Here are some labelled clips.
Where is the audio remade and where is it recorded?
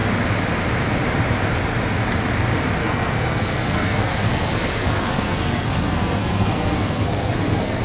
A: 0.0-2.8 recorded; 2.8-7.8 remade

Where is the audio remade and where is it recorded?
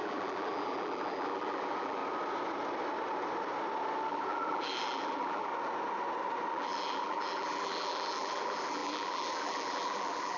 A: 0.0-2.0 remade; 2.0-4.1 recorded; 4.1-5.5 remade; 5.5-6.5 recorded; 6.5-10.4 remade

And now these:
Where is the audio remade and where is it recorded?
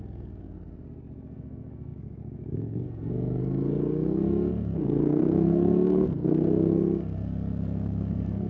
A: 0.0-8.5 remade